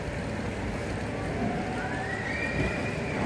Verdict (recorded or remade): recorded